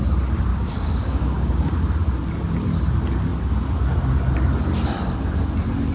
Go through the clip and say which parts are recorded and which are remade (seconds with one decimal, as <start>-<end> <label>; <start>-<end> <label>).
0.0-0.5 recorded; 0.5-1.7 remade; 1.7-5.9 recorded